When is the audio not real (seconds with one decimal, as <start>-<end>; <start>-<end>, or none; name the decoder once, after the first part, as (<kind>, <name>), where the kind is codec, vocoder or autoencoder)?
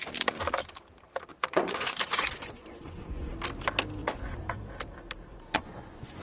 1.3-3.3 (vocoder, Vocos); 4.0-4.6; 5.3-6.2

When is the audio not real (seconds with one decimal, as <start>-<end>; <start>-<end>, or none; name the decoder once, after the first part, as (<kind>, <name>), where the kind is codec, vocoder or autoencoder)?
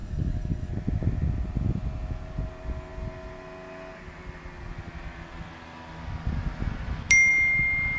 0.0-0.7 (codec, DAC)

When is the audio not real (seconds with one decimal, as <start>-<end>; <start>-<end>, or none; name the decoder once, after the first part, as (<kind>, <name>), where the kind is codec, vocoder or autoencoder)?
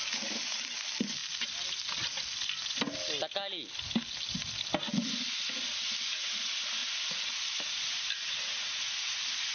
8.5-9.1 (vocoder, Vocos)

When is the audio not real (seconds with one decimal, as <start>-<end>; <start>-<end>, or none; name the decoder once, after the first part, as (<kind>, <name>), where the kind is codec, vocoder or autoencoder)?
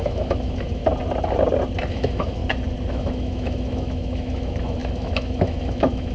0.0-0.8 (autoencoder, DAC-VAE); 1.9-2.4; 2.9-6.1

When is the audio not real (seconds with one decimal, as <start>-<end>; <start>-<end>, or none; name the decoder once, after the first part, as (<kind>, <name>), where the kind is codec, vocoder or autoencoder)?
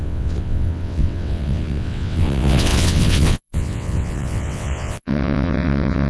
0.0-6.1 (vocoder, WaveNeXt)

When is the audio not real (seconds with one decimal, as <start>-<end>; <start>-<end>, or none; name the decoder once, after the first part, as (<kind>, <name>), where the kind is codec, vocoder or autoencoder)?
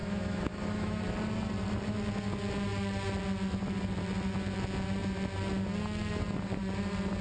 0.0-1.0 (autoencoder, DAC-VAE)